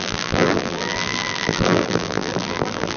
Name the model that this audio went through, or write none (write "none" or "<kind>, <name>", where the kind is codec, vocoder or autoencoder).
vocoder, BigVGAN v2